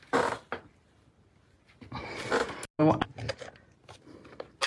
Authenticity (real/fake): real